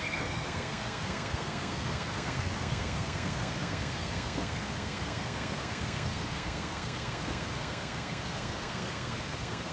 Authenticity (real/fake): fake